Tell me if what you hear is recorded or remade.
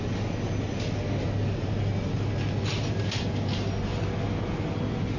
recorded